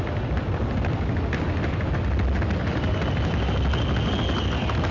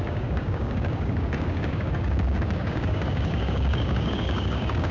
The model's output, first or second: second